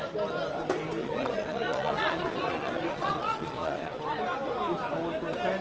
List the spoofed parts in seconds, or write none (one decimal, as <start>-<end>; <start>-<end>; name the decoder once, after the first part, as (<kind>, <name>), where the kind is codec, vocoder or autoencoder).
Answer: 1.0-4.0 (vocoder, Vocos)

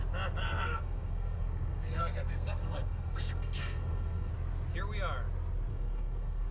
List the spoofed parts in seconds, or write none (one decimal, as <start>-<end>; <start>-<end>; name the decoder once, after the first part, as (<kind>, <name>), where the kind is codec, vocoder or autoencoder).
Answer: 0.4-4.3 (codec, SNAC); 5.7-6.5

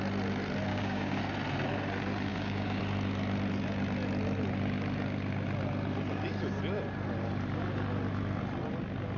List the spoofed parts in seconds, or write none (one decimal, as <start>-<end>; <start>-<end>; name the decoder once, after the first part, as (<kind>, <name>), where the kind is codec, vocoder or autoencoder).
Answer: 0.7-1.2 (codec, DAC); 2.3-2.8